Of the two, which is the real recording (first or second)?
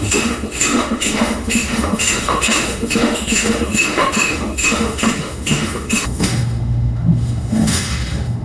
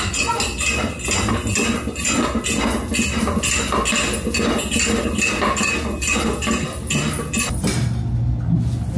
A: second